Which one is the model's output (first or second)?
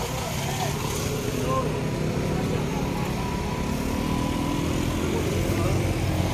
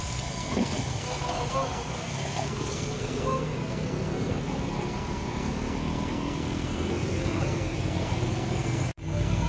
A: second